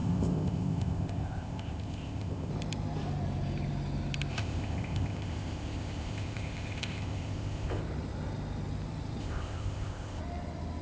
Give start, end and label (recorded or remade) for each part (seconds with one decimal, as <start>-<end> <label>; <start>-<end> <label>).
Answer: 0.0-2.5 remade; 2.5-4.3 recorded; 4.3-7.8 remade; 7.8-9.2 recorded; 9.2-10.2 remade; 10.2-10.8 recorded